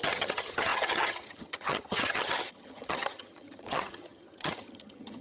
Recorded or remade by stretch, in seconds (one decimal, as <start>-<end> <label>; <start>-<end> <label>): 0.0-5.2 remade